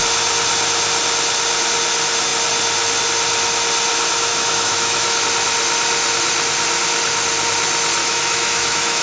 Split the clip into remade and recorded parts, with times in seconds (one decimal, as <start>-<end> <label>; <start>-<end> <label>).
0.0-4.3 recorded; 4.3-5.2 remade; 5.2-8.0 recorded; 8.0-9.0 remade